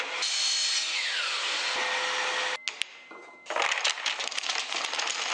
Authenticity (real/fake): real